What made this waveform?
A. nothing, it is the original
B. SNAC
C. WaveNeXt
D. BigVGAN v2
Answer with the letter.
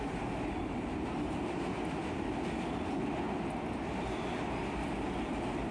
A